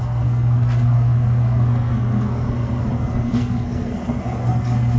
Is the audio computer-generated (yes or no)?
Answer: yes